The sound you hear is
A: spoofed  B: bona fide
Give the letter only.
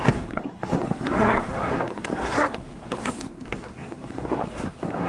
A